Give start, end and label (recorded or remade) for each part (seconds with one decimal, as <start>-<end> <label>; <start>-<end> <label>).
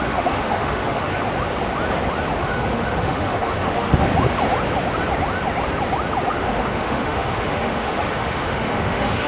0.0-1.1 remade; 1.1-2.4 recorded; 2.4-4.1 remade; 4.1-6.3 recorded; 6.3-9.3 remade